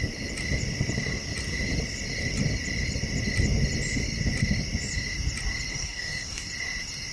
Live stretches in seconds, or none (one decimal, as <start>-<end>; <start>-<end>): 0.0-5.7; 6.5-7.1